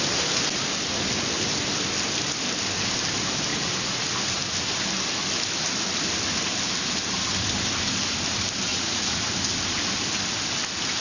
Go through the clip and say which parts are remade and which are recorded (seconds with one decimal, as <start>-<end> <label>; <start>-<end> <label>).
0.0-3.5 recorded; 3.5-4.0 remade; 4.0-8.7 recorded; 8.7-9.2 remade; 9.2-11.0 recorded

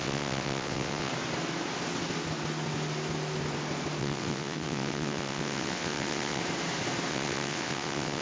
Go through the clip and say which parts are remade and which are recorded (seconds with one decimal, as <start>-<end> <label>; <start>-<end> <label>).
0.0-1.1 remade; 1.1-4.0 recorded; 4.0-6.4 remade; 6.4-7.1 recorded; 7.1-8.2 remade